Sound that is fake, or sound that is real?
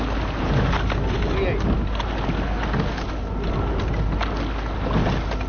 real